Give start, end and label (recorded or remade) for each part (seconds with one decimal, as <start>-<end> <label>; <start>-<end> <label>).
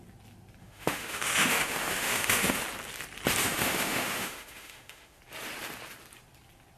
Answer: 0.0-0.6 recorded; 0.6-2.6 remade; 2.6-3.4 recorded; 3.4-5.2 remade; 5.2-6.8 recorded